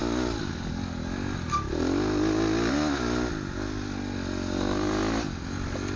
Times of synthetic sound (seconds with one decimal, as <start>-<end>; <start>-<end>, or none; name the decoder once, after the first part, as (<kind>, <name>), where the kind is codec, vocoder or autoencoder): none